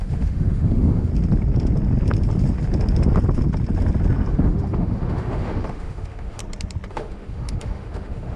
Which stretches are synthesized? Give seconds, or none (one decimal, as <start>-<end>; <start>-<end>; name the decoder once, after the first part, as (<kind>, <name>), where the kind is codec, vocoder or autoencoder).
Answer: 0.0-1.1 (autoencoder, DAC-VAE); 4.3-6.4; 6.9-8.4